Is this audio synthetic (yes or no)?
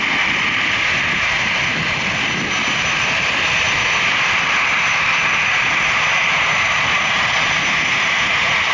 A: no